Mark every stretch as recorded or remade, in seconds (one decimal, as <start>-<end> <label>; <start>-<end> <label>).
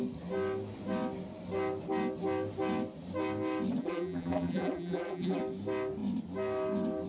0.0-3.8 recorded; 3.8-5.4 remade; 5.4-7.1 recorded